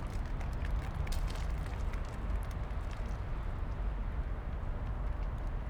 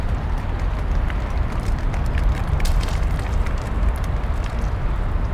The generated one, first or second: second